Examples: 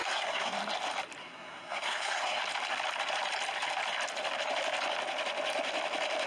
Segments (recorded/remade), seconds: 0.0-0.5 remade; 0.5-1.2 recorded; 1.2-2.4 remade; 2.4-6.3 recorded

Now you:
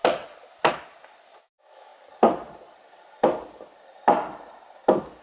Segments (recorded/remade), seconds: 0.0-1.4 recorded; 1.4-1.9 remade; 1.9-5.2 recorded

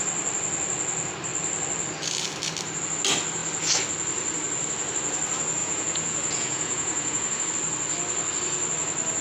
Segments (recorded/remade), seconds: 0.0-5.6 recorded; 5.6-7.5 remade; 7.5-9.2 recorded